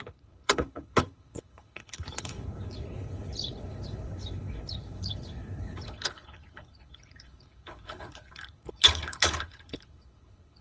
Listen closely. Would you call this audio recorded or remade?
remade